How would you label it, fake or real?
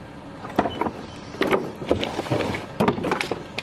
real